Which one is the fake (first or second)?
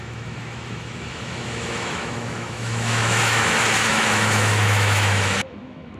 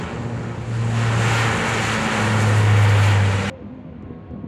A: first